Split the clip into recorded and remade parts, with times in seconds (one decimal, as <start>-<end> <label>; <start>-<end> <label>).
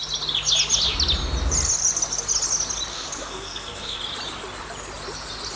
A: 0.0-2.9 recorded; 2.9-4.0 remade; 4.0-5.6 recorded